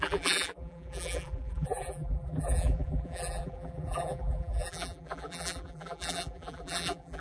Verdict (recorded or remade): remade